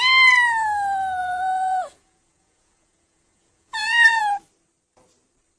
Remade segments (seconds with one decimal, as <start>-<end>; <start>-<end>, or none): 1.2-4.2

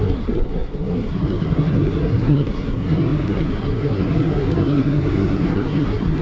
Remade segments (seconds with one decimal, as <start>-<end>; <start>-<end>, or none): 0.0-6.2

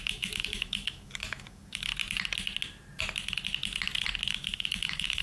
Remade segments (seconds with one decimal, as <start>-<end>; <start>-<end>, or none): 0.0-1.9; 4.3-5.2

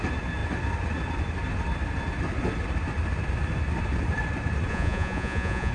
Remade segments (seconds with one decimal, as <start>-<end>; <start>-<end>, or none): 4.7-5.7

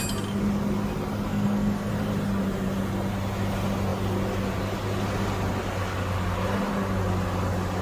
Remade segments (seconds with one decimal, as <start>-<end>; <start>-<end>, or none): 1.3-1.9

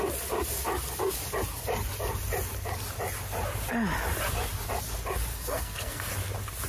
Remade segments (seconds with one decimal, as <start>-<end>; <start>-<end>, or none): 5.3-6.1